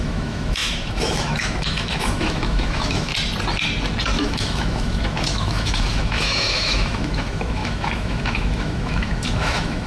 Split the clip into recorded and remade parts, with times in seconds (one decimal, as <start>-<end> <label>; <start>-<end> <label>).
0.0-3.1 remade; 3.1-4.2 recorded; 4.2-9.9 remade